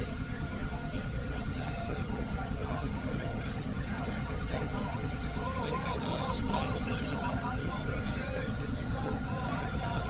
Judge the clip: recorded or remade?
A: remade